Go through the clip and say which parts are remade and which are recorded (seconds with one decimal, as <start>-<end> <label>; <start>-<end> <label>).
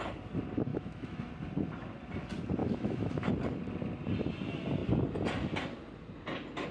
0.0-0.7 recorded; 0.7-1.3 remade; 1.3-2.6 recorded; 2.6-3.3 remade; 3.3-6.7 recorded